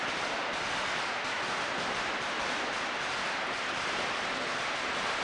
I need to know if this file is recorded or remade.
recorded